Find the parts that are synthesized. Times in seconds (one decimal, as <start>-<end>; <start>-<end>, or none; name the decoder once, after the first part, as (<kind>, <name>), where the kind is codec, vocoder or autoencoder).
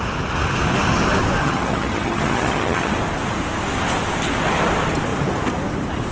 1.4-2.9 (vocoder, HiFi-GAN)